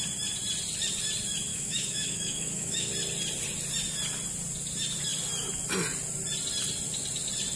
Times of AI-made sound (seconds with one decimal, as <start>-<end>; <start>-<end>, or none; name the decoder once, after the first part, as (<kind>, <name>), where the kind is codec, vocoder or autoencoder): 1.5-2.9 (autoencoder, DAC-VAE)